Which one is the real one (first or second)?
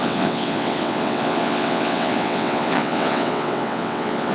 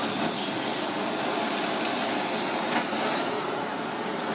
second